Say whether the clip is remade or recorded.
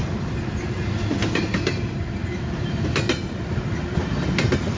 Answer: recorded